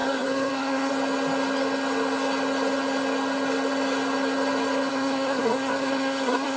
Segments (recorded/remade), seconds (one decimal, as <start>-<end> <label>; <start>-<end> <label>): 0.0-0.9 remade; 0.9-4.9 recorded; 4.9-6.6 remade